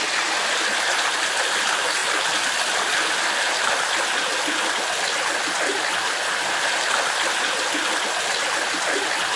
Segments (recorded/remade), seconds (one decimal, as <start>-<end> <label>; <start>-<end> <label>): 0.0-9.4 recorded